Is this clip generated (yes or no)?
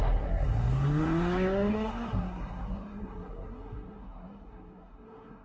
yes